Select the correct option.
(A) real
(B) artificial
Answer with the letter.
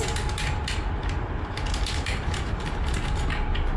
A